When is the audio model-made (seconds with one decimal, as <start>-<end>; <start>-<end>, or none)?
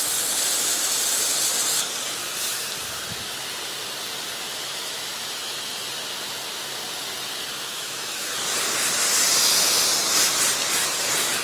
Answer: 4.5-5.9; 7.7-8.3